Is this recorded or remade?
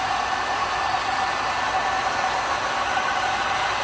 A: recorded